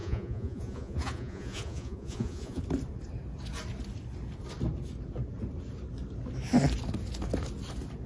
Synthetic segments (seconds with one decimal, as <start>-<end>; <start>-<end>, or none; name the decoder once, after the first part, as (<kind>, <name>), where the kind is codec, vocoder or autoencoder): 0.0-2.6 (vocoder, Vocos)